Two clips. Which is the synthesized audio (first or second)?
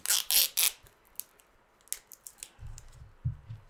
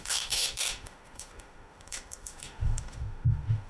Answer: second